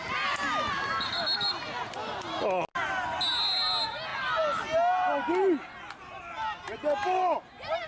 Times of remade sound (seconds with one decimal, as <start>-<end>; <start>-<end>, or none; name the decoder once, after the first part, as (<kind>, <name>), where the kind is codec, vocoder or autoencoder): none